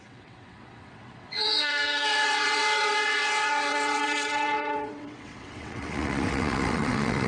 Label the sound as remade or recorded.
remade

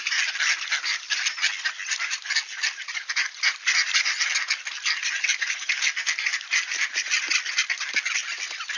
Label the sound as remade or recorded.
recorded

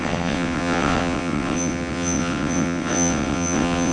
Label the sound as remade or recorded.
remade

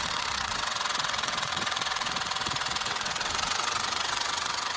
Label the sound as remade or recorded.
remade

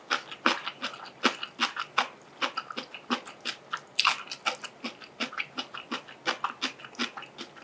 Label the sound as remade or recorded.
recorded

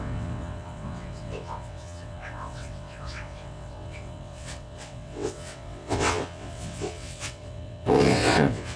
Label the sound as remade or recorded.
remade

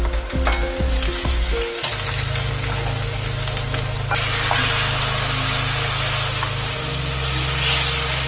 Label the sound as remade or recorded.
recorded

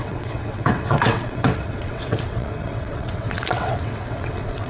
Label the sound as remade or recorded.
remade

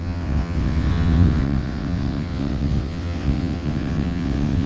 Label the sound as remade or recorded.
remade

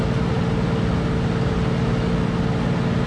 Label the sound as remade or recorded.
recorded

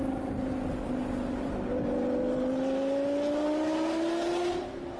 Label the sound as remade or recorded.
recorded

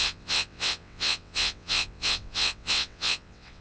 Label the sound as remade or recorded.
remade